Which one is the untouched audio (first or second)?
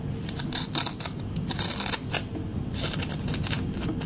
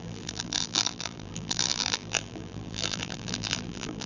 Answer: first